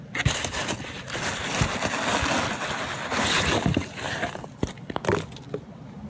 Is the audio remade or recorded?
recorded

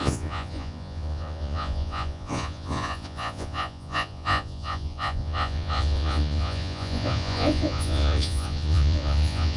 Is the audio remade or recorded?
remade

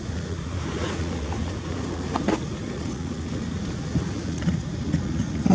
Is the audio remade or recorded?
remade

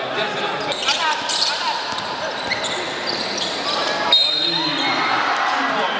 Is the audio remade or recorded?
recorded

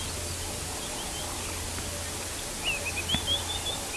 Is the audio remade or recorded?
recorded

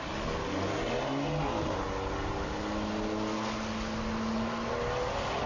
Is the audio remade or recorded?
recorded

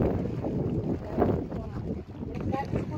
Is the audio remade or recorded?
recorded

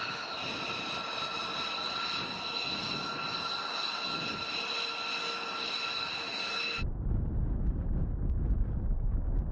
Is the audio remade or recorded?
recorded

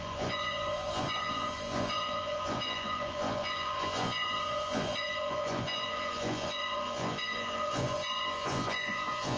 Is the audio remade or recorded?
remade